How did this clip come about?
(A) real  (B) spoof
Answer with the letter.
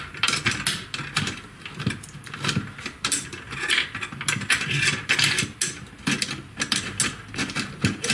A